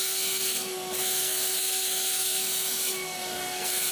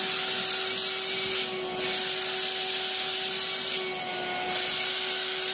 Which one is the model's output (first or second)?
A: first